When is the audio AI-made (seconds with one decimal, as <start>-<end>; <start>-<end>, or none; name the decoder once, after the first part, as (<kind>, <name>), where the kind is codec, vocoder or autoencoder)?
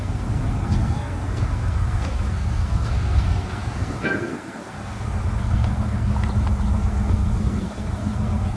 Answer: 0.0-6.1 (codec, SNAC); 6.7-8.6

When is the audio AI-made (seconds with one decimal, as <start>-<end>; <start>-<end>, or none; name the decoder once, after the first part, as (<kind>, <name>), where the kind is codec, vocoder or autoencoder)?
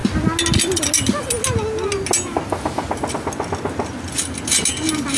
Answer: none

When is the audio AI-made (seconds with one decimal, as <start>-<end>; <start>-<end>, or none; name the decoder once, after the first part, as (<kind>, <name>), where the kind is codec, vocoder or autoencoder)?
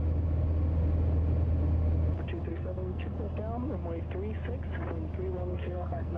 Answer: 2.5-3.4 (codec, SNAC); 5.5-6.2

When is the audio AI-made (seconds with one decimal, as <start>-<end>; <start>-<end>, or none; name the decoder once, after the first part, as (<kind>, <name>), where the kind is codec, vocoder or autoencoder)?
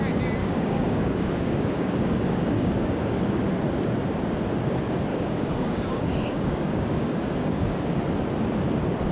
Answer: 0.4-3.4 (codec, DAC); 5.1-7.8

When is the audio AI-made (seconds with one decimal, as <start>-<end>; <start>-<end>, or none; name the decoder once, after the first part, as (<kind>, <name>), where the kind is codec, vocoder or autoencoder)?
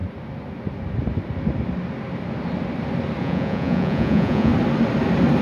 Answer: 3.2-4.5 (vocoder, Vocos)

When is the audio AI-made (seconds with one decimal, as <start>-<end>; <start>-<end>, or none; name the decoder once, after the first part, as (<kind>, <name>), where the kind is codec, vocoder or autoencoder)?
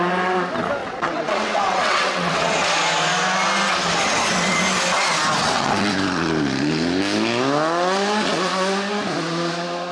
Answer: 0.8-2.5 (vocoder, WaveNeXt); 5.4-5.9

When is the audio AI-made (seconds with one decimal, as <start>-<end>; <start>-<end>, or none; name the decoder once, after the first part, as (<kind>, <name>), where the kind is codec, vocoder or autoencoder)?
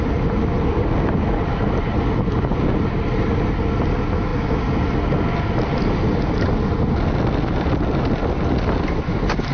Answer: none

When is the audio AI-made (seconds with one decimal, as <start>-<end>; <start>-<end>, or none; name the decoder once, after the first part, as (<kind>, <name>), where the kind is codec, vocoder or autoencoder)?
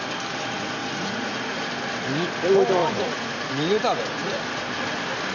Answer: 0.8-1.6 (vocoder, Vocos); 2.8-4.4